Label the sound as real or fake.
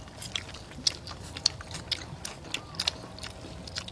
real